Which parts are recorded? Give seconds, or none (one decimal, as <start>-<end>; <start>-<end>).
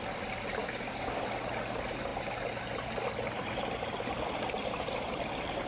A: 0.0-0.6; 1.2-5.7